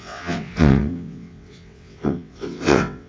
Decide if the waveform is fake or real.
fake